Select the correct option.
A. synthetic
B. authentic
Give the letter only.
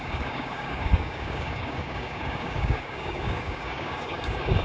A